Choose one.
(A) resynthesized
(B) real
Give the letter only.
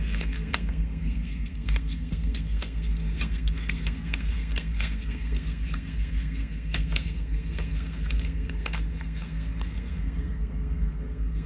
A